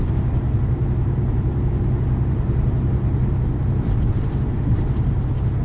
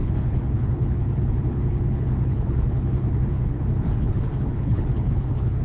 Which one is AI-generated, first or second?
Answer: second